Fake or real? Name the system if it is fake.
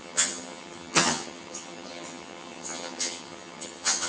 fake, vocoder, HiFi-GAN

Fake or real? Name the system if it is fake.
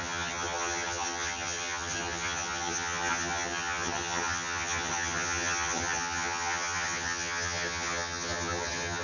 fake, vocoder, HiFi-GAN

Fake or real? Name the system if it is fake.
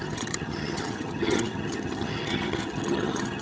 fake, vocoder, HiFi-GAN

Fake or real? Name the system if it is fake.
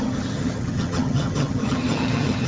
fake, vocoder, HiFi-GAN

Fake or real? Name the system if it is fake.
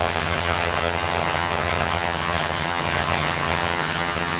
fake, vocoder, HiFi-GAN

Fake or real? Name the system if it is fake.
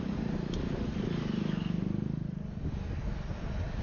real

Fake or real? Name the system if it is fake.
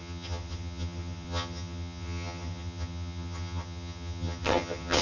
fake, vocoder, HiFi-GAN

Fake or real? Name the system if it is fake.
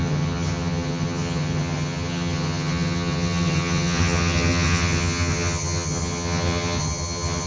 fake, vocoder, HiFi-GAN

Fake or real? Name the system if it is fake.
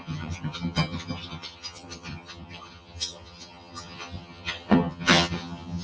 fake, vocoder, HiFi-GAN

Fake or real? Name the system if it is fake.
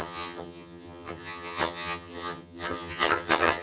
fake, vocoder, HiFi-GAN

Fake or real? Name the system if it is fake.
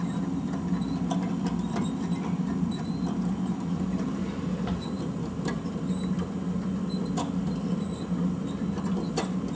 real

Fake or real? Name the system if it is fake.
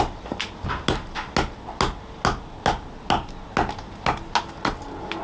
real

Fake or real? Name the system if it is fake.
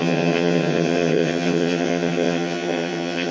fake, vocoder, HiFi-GAN